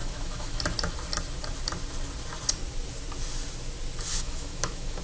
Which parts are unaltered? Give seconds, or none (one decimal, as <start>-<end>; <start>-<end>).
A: 0.6-4.1